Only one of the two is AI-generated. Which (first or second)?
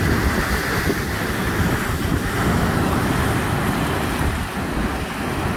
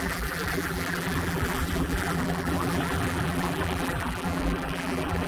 second